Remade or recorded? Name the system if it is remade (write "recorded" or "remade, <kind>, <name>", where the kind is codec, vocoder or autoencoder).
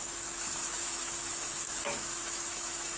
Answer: remade, autoencoder, DAC-VAE